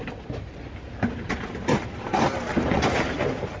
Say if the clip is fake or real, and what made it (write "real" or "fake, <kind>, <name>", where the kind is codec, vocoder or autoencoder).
real